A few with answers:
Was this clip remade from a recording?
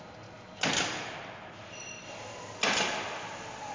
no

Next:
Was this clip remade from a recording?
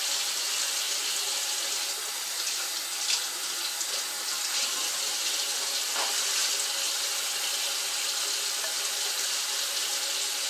no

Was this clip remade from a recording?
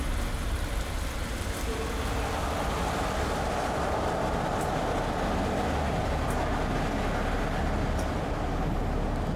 no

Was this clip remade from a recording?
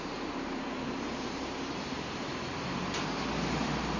yes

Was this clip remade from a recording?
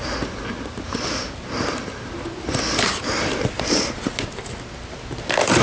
no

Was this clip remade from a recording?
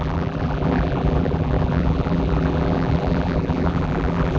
yes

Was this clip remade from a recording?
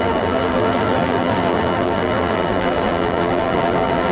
yes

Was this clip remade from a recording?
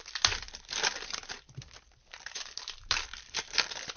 yes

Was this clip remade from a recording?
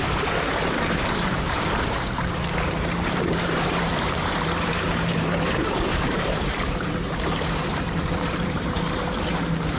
yes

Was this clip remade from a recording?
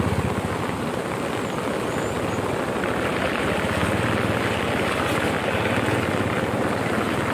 no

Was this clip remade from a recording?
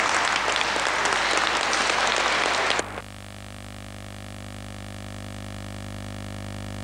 no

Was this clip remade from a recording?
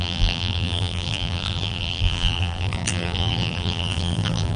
yes